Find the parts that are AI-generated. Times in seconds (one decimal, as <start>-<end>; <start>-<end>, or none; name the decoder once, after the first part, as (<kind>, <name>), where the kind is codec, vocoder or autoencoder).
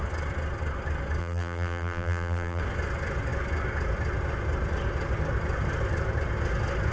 1.2-2.6 (vocoder, BigVGAN v2)